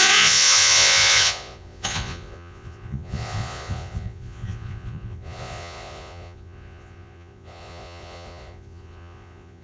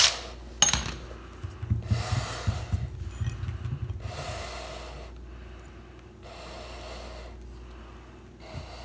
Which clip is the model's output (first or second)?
first